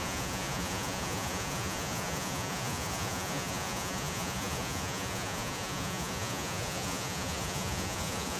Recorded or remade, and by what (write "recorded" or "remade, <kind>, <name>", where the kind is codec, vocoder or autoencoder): remade, vocoder, Vocos